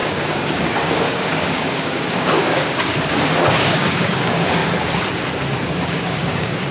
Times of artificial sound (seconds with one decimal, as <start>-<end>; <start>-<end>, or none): 0.0-4.6; 5.6-6.7